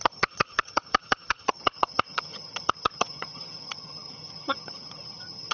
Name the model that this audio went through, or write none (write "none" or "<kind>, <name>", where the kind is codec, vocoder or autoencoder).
vocoder, HiFi-GAN